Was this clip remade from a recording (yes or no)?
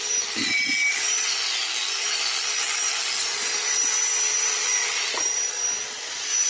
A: no